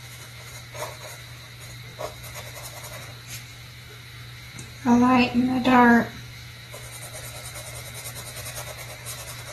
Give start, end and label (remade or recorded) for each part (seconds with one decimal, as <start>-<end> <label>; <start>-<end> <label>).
0.0-0.5 remade; 0.5-3.5 recorded; 3.5-4.6 remade; 4.6-5.7 recorded; 5.7-6.9 remade; 6.9-9.5 recorded